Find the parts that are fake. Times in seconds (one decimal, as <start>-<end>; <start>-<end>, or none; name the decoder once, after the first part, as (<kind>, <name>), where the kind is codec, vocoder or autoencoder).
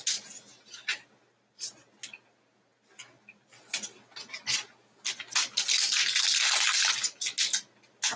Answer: none